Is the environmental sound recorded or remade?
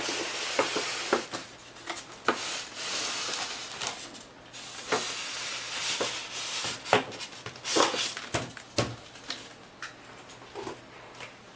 recorded